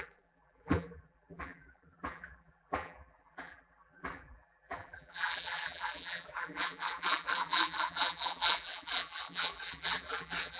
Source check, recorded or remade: remade